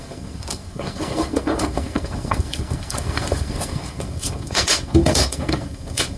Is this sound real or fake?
fake